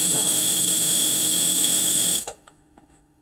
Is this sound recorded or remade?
remade